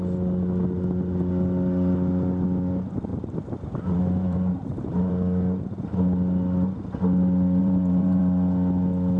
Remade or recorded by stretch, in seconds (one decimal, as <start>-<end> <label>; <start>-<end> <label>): 0.0-3.1 recorded; 3.1-5.1 remade; 5.1-7.6 recorded; 7.6-8.2 remade; 8.2-9.2 recorded